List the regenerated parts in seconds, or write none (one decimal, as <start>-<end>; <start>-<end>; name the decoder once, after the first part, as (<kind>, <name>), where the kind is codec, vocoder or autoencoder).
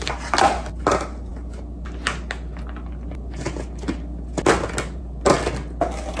none